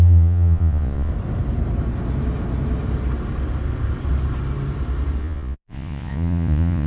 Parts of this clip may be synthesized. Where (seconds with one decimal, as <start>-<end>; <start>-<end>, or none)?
0.0-1.1; 5.2-6.9